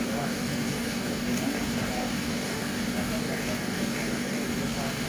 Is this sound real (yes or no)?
no